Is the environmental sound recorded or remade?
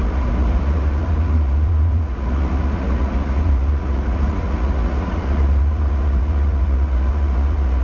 remade